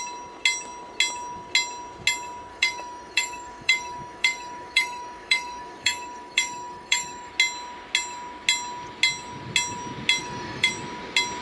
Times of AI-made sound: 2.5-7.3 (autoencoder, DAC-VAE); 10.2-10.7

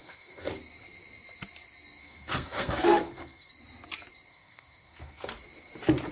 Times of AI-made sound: 0.0-0.5 (codec, SNAC); 2.0-3.5; 4.3-5.3

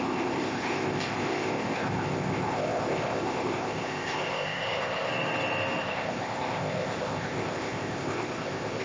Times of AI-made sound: 0.0-5.1 (codec, ZipCodec); 5.8-8.8

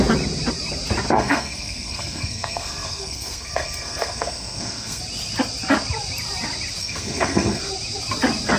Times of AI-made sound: 1.1-5.0 (codec, SNAC); 6.8-7.6

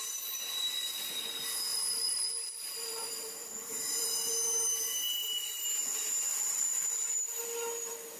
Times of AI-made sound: 1.7-4.3 (vocoder, BigVGAN v2); 6.3-7.4

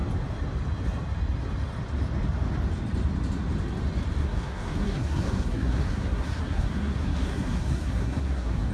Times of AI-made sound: 4.2-8.7 (codec, SNAC)